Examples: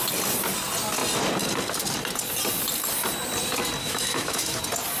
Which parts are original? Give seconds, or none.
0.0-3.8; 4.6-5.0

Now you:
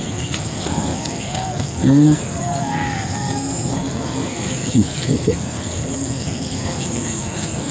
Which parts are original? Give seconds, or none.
none

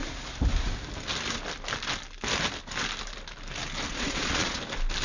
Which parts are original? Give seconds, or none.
0.0-3.9; 4.6-5.0

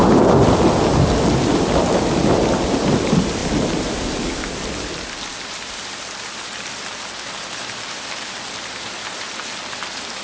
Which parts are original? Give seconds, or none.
0.0-5.3; 9.4-10.2

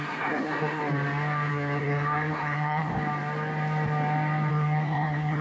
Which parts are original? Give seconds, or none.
0.8-1.5; 2.9-4.5

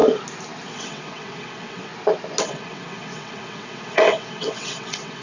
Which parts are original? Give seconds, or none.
0.0-0.7; 1.9-2.4